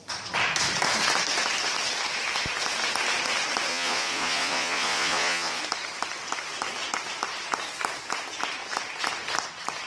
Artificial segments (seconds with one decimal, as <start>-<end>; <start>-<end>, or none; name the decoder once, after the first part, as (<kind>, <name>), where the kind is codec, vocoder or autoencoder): 3.7-5.6 (vocoder, Vocos)

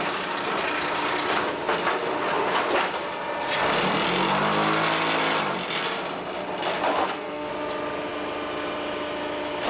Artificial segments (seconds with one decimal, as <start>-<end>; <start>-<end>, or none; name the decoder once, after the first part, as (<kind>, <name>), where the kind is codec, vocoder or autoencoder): 7.0-7.5 (codec, SNAC)

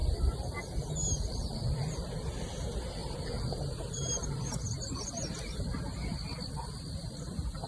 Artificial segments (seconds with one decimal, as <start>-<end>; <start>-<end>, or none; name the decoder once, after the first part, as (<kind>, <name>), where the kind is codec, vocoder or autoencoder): 3.0-5.1 (vocoder, BigVGAN v2)

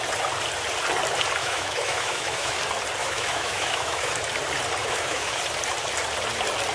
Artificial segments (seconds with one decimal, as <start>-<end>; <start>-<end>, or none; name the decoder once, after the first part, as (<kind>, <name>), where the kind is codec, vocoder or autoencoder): 1.4-2.6 (autoencoder, DAC-VAE); 3.0-4.1; 4.8-5.4

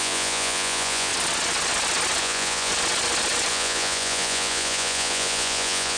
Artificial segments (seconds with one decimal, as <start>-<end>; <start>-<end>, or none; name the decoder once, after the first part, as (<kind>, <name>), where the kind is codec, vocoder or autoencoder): 0.0-1.1 (vocoder, Vocos); 2.2-2.7; 3.5-6.0